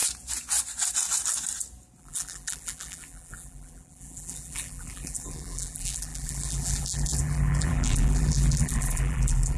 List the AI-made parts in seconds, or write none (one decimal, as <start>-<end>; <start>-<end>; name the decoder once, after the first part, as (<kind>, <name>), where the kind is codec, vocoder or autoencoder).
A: 2.0-9.6 (vocoder, BigVGAN v2)

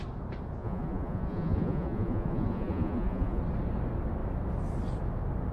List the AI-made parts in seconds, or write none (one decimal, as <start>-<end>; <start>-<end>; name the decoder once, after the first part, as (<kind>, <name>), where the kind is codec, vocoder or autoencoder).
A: 0.6-3.4 (vocoder, Vocos)

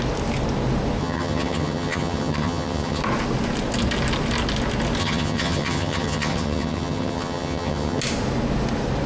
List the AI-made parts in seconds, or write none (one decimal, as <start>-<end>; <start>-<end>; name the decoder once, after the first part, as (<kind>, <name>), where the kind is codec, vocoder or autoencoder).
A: 1.0-3.0 (vocoder, HiFi-GAN); 5.0-8.0

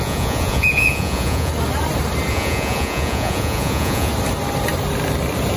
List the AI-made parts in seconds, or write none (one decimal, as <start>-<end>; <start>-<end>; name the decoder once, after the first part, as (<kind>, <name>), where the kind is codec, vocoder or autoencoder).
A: 0.0-1.5 (vocoder, Vocos); 2.3-4.1

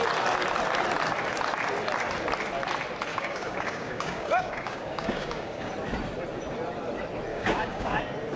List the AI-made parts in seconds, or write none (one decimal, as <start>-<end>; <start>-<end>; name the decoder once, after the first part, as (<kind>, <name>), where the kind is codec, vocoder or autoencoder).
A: 3.1-5.7 (codec, DAC); 7.3-8.0